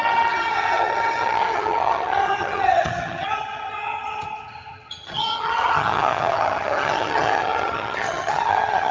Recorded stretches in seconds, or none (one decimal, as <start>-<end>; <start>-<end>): none

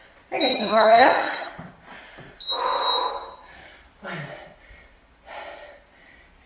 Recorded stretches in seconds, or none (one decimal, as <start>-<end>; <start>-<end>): 0.0-0.5; 1.5-6.5

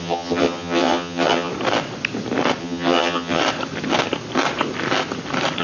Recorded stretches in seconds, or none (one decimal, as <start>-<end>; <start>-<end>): 1.5-2.6; 3.4-5.6

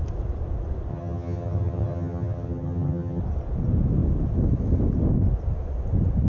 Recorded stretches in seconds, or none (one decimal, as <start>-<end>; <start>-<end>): 0.0-0.9; 3.2-6.3

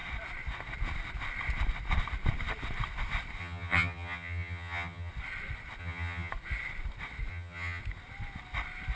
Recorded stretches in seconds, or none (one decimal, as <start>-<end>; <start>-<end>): 0.0-3.4; 5.1-5.8; 6.3-7.3; 7.8-9.0